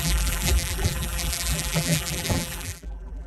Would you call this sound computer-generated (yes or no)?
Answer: yes